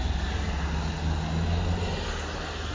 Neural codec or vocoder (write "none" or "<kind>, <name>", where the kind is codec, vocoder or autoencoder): none